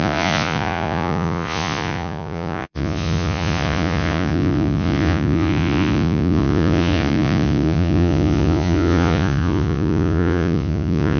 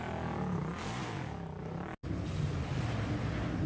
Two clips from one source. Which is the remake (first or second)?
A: first